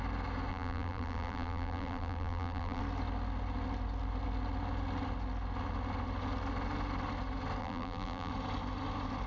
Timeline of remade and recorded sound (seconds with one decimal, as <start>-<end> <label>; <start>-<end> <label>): 0.0-0.5 recorded; 0.5-2.8 remade; 2.8-7.6 recorded; 7.6-8.3 remade; 8.3-9.3 recorded